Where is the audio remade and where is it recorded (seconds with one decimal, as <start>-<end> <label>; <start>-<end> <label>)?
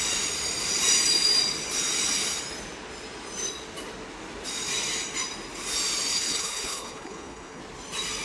0.0-6.1 recorded; 6.1-7.6 remade; 7.6-8.2 recorded